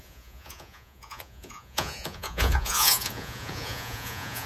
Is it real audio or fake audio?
fake